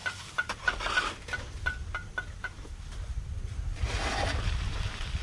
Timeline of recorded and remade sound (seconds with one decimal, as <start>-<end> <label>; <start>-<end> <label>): 0.0-5.2 remade